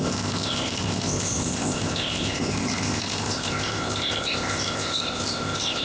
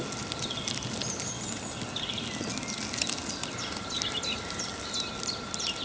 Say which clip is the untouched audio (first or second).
second